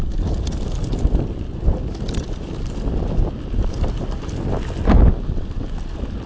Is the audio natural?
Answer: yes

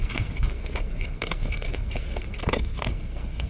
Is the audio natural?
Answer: no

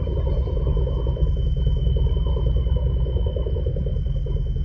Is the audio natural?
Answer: yes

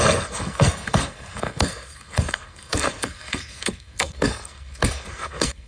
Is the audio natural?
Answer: no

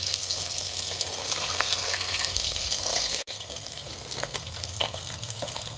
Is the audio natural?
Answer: no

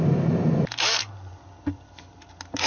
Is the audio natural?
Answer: yes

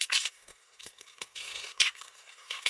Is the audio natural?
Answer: no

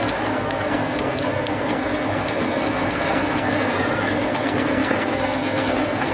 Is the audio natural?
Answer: no